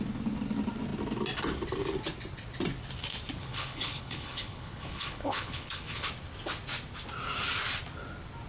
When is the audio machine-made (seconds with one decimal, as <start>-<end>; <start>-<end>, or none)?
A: 3.4-6.1